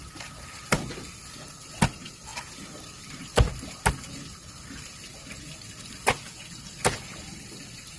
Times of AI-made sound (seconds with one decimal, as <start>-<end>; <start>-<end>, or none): none